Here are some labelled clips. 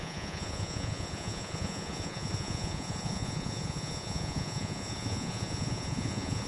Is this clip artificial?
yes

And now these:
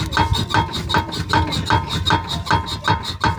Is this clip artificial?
no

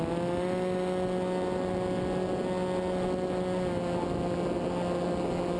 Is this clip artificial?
no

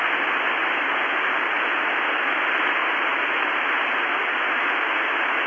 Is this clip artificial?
no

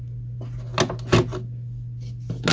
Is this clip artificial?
no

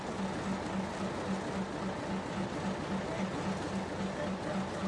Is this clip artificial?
no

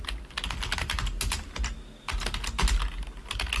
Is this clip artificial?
no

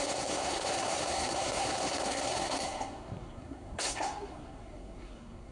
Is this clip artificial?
yes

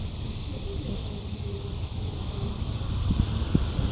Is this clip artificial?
no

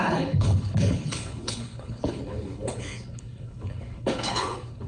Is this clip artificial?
yes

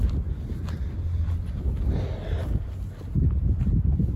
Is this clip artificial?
no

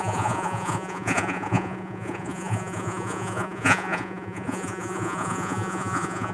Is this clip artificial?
yes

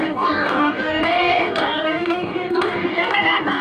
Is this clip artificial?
yes